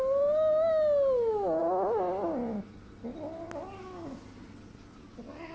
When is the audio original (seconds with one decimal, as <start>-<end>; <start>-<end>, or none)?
0.0-5.5